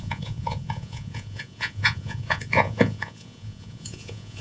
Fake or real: fake